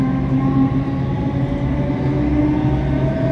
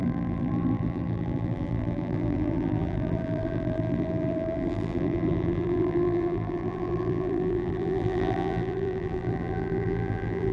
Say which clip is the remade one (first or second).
second